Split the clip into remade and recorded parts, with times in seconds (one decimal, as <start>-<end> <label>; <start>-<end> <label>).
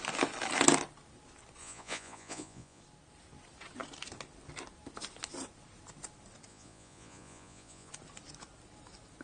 0.0-1.6 recorded; 1.6-2.8 remade; 2.8-6.5 recorded; 6.5-7.9 remade; 7.9-9.2 recorded